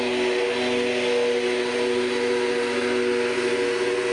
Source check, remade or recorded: recorded